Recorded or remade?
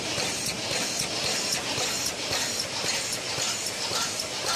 recorded